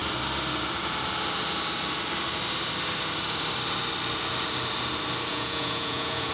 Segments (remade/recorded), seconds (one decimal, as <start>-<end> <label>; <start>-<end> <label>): 0.0-5.3 recorded; 5.3-6.3 remade